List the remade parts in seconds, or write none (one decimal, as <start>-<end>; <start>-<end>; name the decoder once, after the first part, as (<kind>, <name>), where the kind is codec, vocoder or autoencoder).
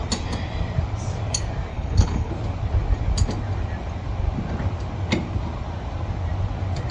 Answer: 1.7-2.3 (codec, HILCodec)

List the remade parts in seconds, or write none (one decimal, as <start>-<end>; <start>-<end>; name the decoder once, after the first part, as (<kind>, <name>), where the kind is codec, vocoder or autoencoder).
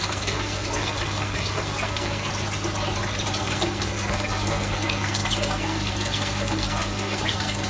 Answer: 0.0-2.3 (codec, SNAC); 3.4-7.7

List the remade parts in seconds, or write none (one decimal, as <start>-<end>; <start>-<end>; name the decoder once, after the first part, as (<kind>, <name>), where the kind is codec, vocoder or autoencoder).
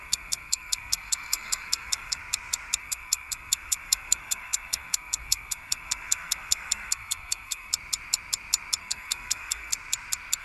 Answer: 0.0-2.2 (codec, SNAC); 2.8-7.7; 8.8-9.7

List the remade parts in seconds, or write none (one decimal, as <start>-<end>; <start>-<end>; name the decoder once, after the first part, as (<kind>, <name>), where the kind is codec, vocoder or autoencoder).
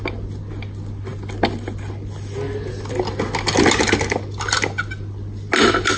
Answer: none